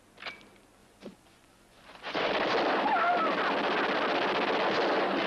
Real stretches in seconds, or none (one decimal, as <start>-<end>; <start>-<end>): 0.0-0.8; 2.3-5.3